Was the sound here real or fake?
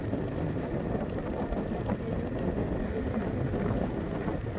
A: real